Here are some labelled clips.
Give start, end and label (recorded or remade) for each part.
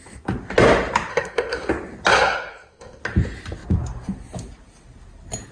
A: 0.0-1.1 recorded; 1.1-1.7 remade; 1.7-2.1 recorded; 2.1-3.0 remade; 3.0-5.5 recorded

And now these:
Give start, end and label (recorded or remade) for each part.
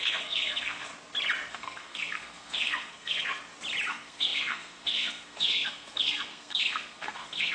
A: 0.0-0.9 remade; 0.9-1.5 recorded; 1.5-3.4 remade; 3.4-3.9 recorded; 3.9-7.5 remade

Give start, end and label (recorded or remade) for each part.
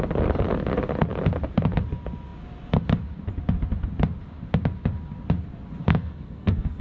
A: 0.0-5.8 recorded; 5.8-6.8 remade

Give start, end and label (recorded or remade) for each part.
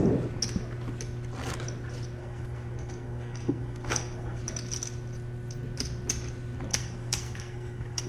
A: 0.0-2.2 recorded; 2.2-4.4 remade; 4.4-6.7 recorded; 6.7-8.1 remade